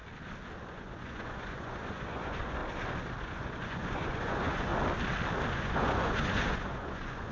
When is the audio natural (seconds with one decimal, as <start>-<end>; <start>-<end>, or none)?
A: 0.0-0.6; 2.6-3.2; 4.7-5.5